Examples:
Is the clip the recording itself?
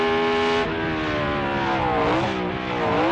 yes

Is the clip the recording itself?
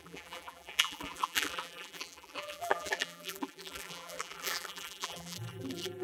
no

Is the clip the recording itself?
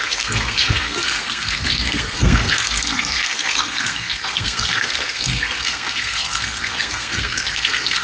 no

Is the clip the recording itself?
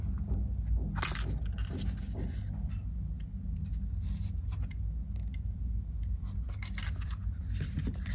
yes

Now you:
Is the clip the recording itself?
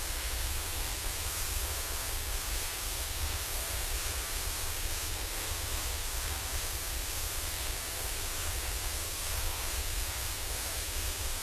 no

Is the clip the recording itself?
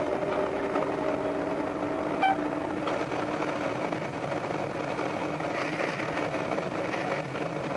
yes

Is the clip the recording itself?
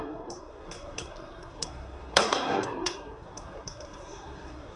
no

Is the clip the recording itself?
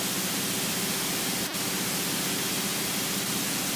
yes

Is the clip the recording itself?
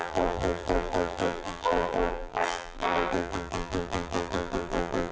no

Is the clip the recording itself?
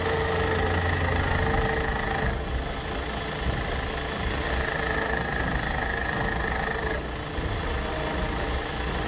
yes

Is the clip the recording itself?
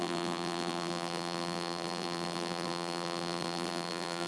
no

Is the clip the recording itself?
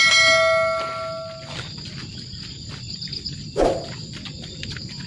yes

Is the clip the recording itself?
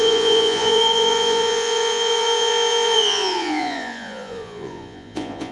no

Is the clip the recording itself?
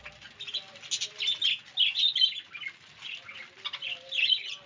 yes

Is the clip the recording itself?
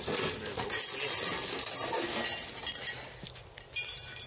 yes